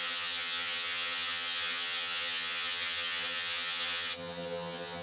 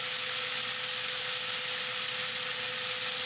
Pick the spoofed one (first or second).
first